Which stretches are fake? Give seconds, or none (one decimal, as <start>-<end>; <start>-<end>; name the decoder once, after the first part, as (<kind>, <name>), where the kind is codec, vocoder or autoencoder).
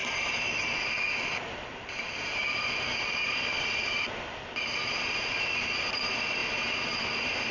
none